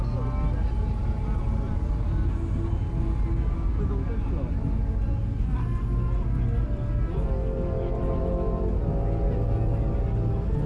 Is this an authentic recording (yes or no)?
yes